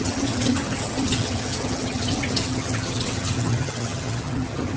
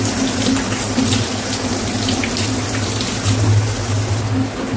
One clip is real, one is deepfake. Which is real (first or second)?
second